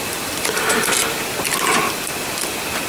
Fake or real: real